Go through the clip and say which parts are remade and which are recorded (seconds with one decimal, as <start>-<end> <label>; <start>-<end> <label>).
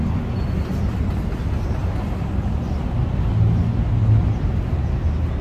0.0-5.4 recorded